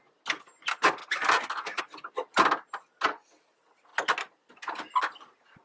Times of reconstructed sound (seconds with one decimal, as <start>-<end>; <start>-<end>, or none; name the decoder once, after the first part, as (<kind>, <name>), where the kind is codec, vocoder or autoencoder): none